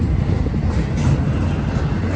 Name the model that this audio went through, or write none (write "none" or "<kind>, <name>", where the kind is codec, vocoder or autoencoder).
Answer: none